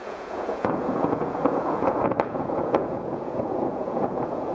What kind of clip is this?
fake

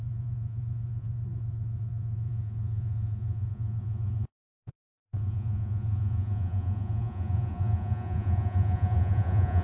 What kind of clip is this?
fake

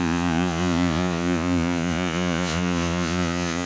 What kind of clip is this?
fake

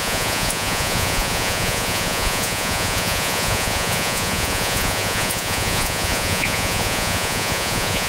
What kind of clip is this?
fake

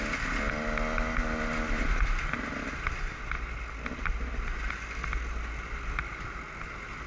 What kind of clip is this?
real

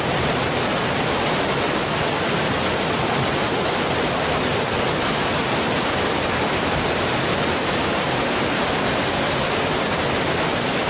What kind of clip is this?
real